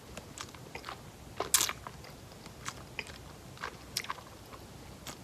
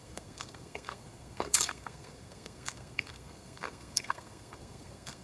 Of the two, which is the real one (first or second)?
first